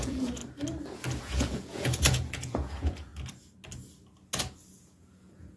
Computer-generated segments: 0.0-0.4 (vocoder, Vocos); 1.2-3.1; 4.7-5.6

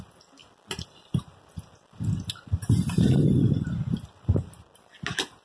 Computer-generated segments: none

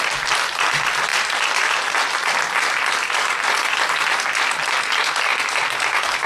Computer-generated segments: none

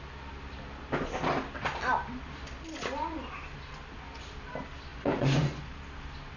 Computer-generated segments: 4.9-5.7 (vocoder, Vocos)

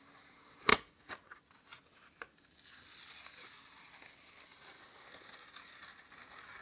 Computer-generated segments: 0.7-1.4 (vocoder, Vocos)

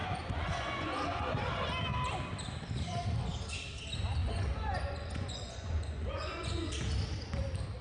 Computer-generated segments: 0.0-1.3 (vocoder, Vocos); 4.2-6.7

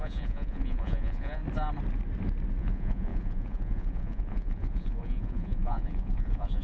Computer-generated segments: 0.0-1.4 (vocoder, Vocos); 2.6-6.6

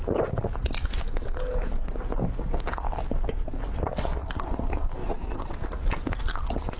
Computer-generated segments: 5.0-5.6 (vocoder, Vocos)